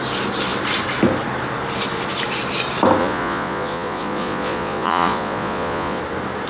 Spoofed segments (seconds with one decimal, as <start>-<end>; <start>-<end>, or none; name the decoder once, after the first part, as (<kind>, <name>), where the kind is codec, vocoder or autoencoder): 3.0-6.0 (vocoder, Vocos)